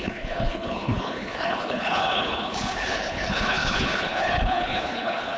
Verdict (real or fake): fake